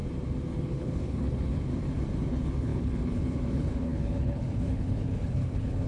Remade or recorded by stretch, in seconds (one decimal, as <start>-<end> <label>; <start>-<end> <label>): 0.0-0.6 recorded; 0.6-1.7 remade; 1.7-2.3 recorded; 2.3-5.9 remade